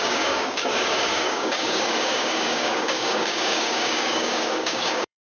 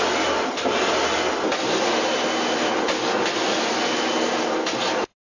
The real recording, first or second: second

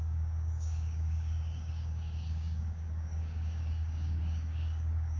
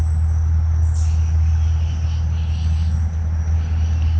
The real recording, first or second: second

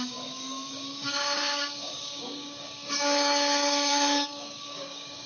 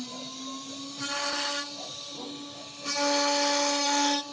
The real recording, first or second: second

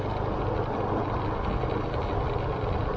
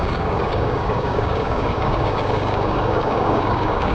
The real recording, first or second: first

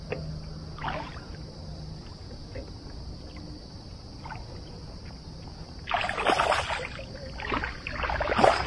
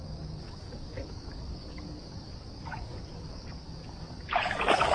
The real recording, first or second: first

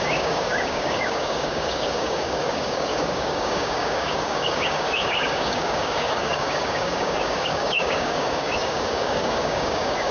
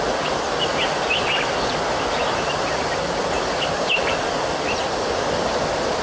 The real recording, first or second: second